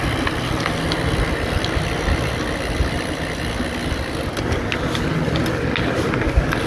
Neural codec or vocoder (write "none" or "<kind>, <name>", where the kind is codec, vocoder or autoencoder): none